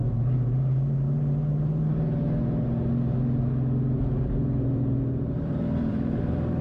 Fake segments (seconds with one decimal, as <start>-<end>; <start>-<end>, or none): 4.0-6.6